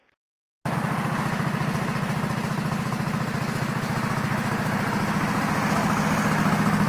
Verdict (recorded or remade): recorded